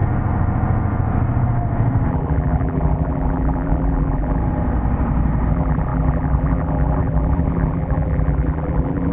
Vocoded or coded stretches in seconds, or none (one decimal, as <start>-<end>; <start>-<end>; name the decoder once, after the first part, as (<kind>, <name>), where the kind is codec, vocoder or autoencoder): 2.1-4.4 (vocoder, BigVGAN v2); 5.5-9.1

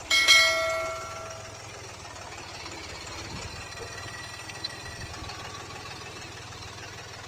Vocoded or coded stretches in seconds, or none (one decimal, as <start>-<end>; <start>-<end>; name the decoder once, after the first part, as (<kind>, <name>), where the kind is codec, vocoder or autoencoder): 3.5-5.1 (codec, SNAC)

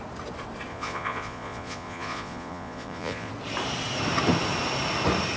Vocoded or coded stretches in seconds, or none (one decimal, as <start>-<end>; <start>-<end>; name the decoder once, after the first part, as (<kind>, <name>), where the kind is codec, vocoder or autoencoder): 0.7-3.3 (vocoder, Vocos)

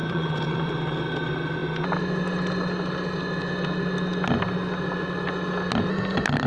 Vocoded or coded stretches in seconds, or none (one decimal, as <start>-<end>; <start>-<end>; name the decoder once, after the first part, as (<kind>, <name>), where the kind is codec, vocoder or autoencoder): 0.0-0.7 (vocoder, Vocos)

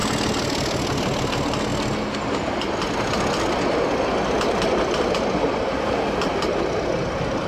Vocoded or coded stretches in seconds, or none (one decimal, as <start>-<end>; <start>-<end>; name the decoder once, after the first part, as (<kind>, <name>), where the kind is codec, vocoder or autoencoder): none

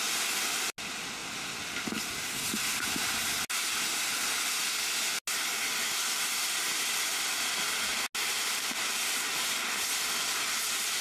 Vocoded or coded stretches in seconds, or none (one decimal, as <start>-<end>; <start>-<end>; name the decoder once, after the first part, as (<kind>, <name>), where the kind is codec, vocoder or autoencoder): none

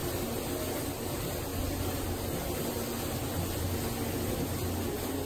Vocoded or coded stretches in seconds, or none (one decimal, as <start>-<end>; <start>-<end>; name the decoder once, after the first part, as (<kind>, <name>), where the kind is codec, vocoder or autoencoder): none

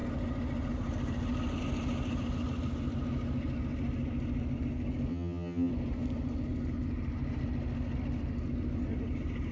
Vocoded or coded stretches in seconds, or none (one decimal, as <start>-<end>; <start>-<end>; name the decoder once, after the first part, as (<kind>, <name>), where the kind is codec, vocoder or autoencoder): 5.1-5.7 (vocoder, HiFi-GAN)